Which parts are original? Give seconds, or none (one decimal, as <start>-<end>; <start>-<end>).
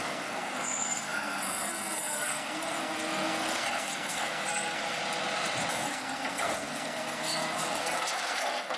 5.0-5.7